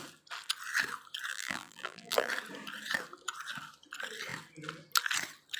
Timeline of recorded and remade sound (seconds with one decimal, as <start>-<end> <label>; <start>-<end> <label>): 0.0-1.3 recorded; 1.3-2.3 remade; 2.3-5.6 recorded